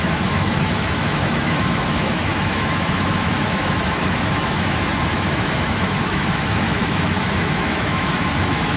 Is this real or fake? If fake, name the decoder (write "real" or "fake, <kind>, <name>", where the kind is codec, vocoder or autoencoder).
fake, autoencoder, DAC-VAE